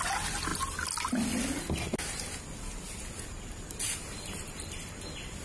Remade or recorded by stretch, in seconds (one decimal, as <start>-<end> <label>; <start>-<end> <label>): 0.0-5.4 recorded